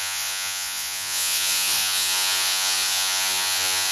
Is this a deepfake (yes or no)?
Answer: yes